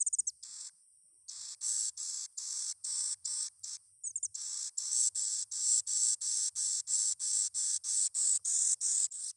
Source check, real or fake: real